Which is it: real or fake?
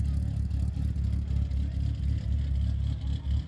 real